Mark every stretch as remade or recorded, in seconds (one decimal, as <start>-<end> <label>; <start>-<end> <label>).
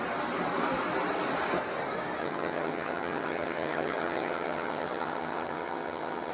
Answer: 0.0-2.2 recorded; 2.2-6.3 remade